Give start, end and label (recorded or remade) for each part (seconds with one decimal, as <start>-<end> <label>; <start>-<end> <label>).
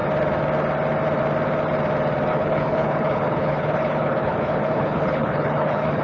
0.0-2.3 recorded; 2.3-6.0 remade